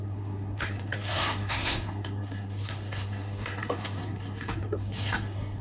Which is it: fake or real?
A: fake